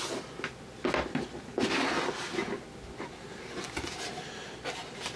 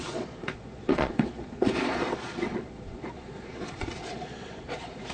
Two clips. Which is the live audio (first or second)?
first